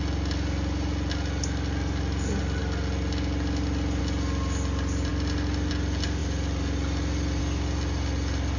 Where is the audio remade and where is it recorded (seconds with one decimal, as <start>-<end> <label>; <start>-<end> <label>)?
0.0-8.6 recorded